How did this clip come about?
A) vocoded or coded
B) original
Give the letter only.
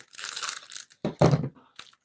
B